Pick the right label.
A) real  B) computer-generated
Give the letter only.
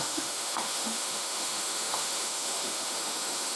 B